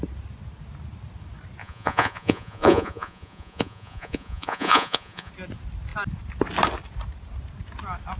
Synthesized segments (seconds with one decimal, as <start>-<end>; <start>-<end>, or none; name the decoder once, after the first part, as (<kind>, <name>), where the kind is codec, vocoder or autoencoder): 1.6-5.3 (vocoder, Vocos)